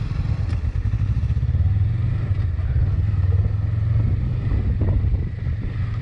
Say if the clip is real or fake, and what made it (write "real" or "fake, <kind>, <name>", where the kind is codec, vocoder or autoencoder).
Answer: real